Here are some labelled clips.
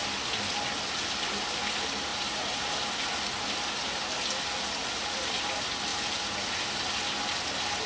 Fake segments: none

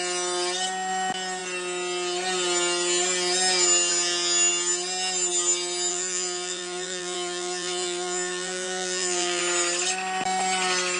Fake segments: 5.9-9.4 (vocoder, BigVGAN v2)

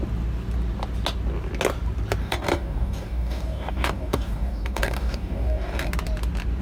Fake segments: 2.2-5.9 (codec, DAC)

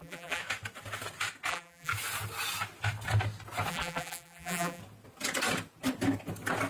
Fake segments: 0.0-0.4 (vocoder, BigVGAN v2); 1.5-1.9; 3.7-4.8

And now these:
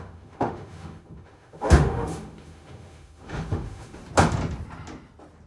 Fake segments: 0.0-4.0 (autoencoder, DAC-VAE)

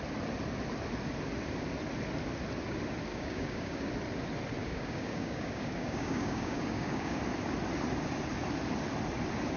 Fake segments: 3.1-3.9 (codec, DAC); 4.6-7.2

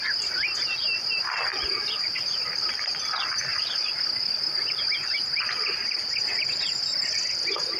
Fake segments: none